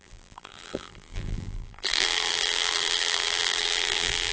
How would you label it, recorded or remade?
remade